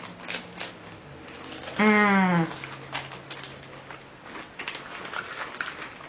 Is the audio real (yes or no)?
yes